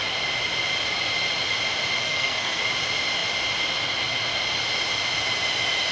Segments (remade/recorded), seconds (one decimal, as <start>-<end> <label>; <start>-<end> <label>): 0.0-2.0 recorded; 2.0-2.6 remade; 2.6-5.9 recorded